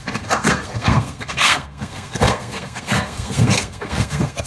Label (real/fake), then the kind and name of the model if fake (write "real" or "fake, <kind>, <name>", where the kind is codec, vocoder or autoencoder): fake, codec, SNAC